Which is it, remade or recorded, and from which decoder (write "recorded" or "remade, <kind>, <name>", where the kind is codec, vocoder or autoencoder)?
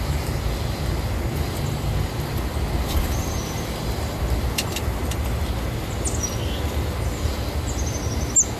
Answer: recorded